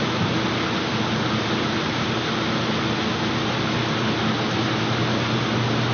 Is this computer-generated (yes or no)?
no